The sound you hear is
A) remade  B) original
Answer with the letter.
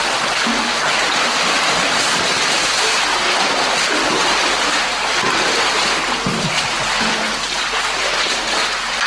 B